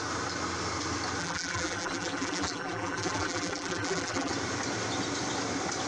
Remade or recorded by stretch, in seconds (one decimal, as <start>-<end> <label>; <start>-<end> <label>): 0.0-1.2 recorded; 1.2-4.3 remade; 4.3-5.9 recorded